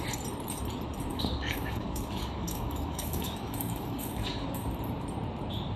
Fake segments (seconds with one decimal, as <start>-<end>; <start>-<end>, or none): 1.1-4.6